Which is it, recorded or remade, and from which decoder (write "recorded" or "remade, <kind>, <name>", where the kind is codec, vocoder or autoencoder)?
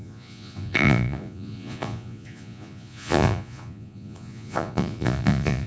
remade, vocoder, Vocos